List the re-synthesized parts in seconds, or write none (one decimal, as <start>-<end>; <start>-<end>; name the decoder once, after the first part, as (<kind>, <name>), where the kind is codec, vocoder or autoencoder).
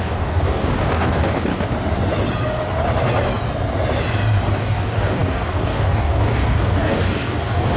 0.0-1.5 (codec, DAC); 4.6-7.8